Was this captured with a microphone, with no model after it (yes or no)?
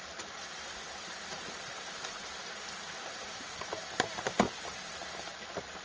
yes